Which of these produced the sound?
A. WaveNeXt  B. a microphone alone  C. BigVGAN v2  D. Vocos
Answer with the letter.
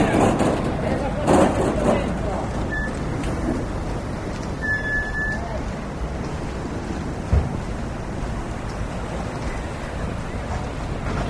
B